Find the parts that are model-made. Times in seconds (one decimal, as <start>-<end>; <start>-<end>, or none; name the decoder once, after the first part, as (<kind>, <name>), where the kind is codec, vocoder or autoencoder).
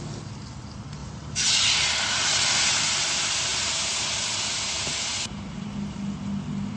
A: 1.0-1.5 (vocoder, BigVGAN v2); 3.5-6.0